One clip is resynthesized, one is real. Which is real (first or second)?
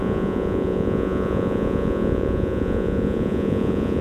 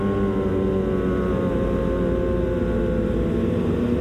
second